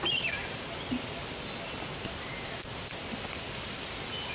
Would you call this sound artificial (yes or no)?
no